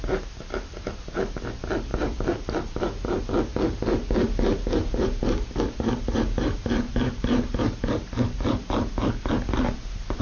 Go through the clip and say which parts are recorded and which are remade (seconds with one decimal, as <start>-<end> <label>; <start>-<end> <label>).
0.0-1.9 recorded; 1.9-3.3 remade; 3.3-4.5 recorded; 4.5-9.5 remade; 9.5-10.2 recorded